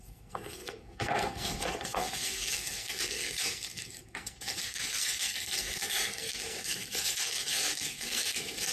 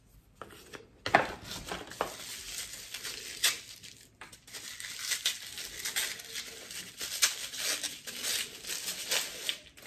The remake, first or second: first